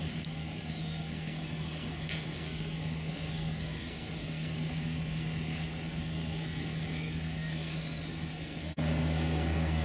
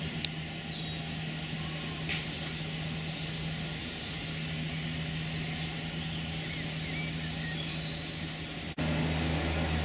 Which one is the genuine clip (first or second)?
second